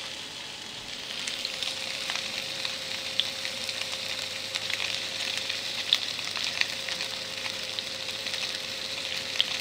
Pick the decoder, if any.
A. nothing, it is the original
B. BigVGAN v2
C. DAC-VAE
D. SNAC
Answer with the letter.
B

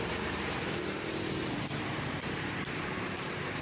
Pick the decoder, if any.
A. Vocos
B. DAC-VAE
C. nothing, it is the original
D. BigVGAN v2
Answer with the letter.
D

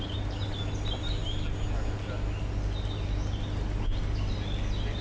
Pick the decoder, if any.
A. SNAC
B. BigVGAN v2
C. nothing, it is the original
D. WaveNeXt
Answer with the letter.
C